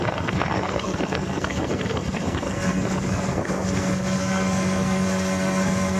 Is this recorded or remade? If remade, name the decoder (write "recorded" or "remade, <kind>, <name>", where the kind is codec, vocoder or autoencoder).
remade, codec, SNAC